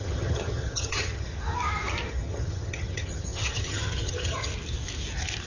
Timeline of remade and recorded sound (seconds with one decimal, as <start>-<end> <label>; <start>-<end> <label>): 0.0-1.3 remade; 1.3-2.1 recorded; 2.1-4.5 remade; 4.5-5.5 recorded